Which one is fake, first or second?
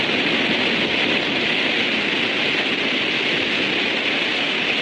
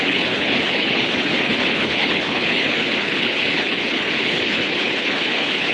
second